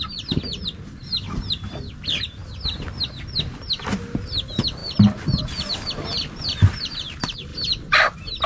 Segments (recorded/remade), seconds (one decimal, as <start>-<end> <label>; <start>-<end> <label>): 0.0-8.5 recorded